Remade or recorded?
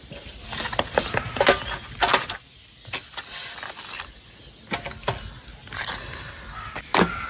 recorded